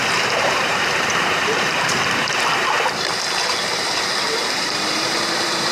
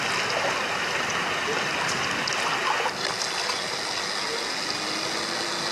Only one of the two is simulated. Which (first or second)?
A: first